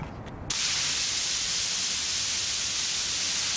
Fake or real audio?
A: real